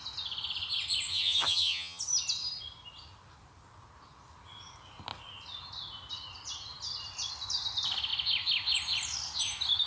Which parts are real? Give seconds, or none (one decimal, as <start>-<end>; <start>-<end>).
0.0-1.1; 2.0-9.9